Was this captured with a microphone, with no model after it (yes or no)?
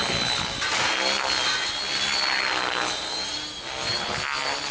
yes